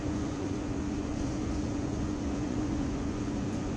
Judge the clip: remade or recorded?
remade